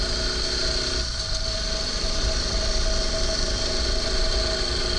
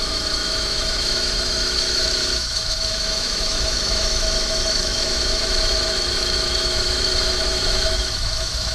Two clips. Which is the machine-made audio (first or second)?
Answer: second